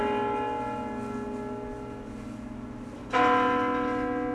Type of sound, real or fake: real